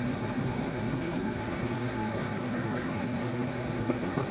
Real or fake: fake